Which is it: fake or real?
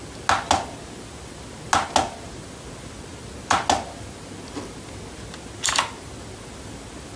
real